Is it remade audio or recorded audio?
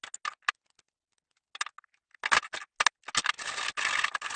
recorded